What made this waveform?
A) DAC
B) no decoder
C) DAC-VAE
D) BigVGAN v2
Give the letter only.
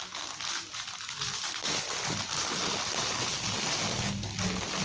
B